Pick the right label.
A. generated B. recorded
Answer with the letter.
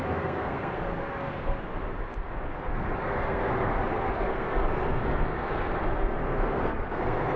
A